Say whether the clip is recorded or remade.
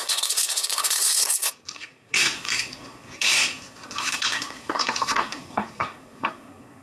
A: remade